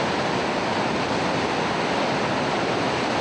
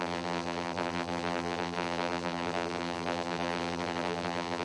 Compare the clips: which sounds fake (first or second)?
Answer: second